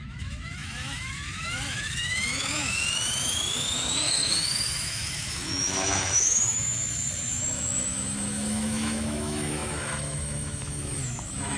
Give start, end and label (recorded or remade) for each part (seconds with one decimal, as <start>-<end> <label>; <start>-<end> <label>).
0.0-11.6 remade